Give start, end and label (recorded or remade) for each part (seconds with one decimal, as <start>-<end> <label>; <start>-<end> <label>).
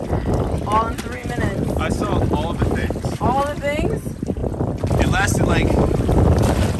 0.0-4.4 recorded; 4.4-6.8 remade